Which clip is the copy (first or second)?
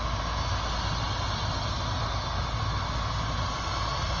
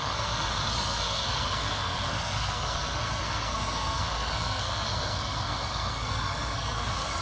second